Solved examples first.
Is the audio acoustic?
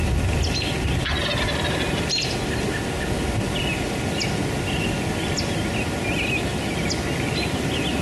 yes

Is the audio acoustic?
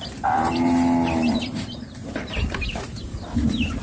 yes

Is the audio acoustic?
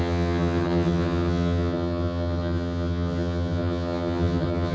no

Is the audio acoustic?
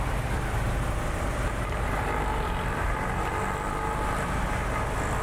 yes